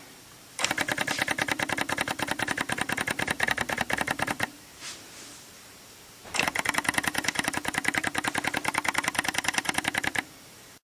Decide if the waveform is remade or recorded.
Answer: remade